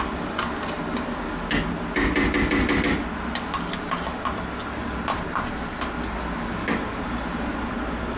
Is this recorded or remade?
recorded